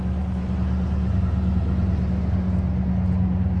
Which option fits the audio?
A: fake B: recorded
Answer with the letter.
B